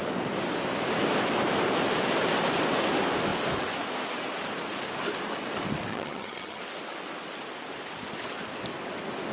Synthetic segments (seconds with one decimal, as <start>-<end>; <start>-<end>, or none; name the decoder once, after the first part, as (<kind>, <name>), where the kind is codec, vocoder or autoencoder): 5.9-6.6 (vocoder, HiFi-GAN)